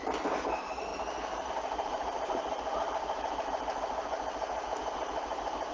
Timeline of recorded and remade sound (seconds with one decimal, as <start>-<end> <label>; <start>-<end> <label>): 0.0-0.9 remade; 0.9-1.5 recorded; 1.5-5.7 remade